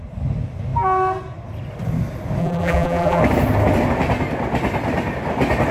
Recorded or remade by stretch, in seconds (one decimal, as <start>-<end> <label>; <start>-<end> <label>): 0.0-2.4 recorded; 2.4-3.2 remade; 3.2-5.7 recorded